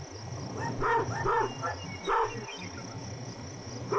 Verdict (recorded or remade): recorded